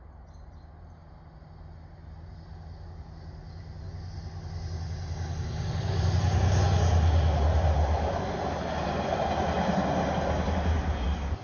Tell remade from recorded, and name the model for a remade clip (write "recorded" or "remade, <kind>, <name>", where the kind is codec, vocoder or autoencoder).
recorded